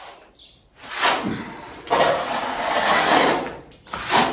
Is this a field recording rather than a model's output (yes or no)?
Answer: yes